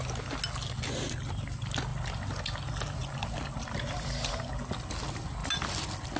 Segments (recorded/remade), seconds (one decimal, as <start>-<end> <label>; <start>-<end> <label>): 0.0-6.2 recorded